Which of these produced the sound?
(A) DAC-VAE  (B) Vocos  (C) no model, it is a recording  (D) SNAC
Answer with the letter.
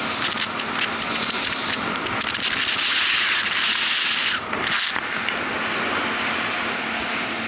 C